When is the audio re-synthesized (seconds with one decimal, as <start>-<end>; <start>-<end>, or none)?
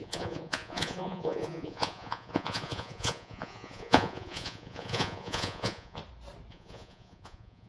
0.0-6.0; 6.5-7.7